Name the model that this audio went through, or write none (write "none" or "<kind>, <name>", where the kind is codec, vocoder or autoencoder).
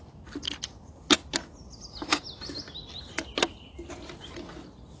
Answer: none